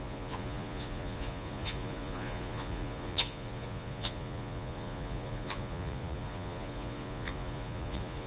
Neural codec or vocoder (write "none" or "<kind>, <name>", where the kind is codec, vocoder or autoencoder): vocoder, Vocos